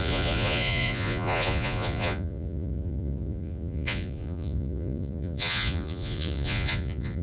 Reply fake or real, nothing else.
fake